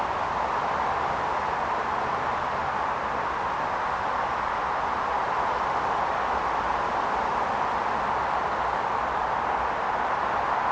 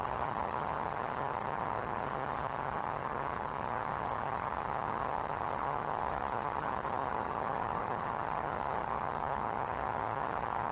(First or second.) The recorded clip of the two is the first